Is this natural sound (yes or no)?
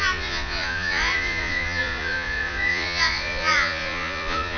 no